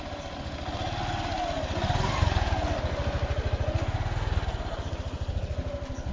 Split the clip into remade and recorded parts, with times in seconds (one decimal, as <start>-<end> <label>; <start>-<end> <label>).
0.0-6.1 recorded

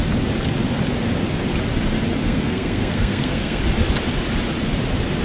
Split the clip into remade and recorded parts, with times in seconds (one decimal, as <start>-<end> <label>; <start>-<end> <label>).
0.0-2.2 recorded; 2.2-3.6 remade; 3.6-5.2 recorded

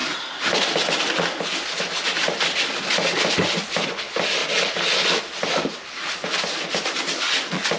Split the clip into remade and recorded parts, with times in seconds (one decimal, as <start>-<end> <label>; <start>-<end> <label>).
0.0-7.8 recorded

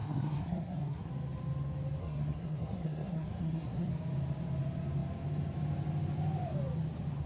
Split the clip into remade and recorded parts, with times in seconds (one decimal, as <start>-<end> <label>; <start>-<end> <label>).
0.0-1.1 remade; 1.1-2.0 recorded; 2.0-3.9 remade; 3.9-7.3 recorded

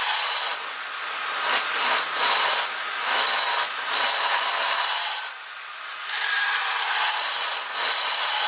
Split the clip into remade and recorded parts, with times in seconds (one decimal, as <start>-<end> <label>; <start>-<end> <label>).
0.0-8.5 recorded

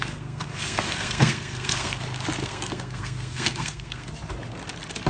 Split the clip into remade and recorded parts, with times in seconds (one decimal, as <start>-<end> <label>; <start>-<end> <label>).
0.0-2.0 remade; 2.0-2.4 recorded; 2.4-4.1 remade; 4.1-5.1 recorded

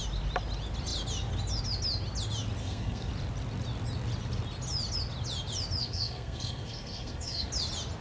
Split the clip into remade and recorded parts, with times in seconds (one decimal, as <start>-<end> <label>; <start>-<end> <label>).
0.0-2.6 recorded; 2.6-3.1 remade; 3.1-5.8 recorded; 5.8-7.5 remade; 7.5-8.0 recorded

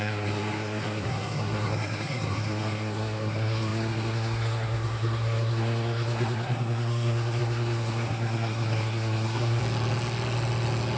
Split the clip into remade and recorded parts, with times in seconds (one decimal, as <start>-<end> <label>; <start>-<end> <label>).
0.0-9.6 remade; 9.6-11.0 recorded